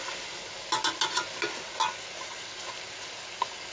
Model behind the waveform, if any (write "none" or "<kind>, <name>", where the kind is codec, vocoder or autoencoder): none